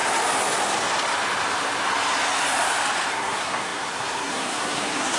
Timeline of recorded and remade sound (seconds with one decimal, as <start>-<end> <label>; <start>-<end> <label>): 0.0-3.1 recorded; 3.1-5.2 remade